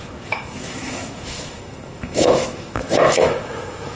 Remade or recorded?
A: remade